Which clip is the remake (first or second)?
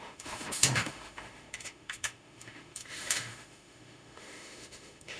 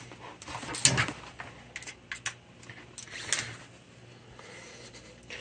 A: first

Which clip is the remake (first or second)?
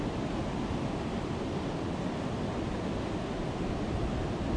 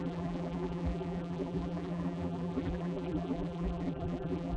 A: second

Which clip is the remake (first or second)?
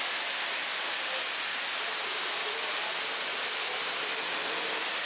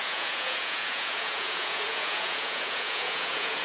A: second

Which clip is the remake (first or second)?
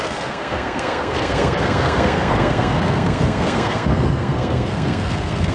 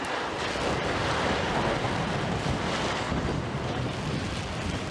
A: first